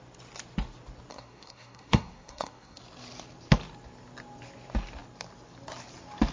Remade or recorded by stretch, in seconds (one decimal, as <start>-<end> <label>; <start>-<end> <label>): 0.0-1.1 recorded; 1.1-2.8 remade; 2.8-6.3 recorded